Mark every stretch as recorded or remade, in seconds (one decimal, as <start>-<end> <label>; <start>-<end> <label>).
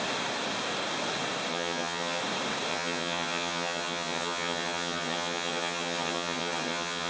0.0-1.5 recorded; 1.5-2.2 remade; 2.2-2.7 recorded; 2.7-7.1 remade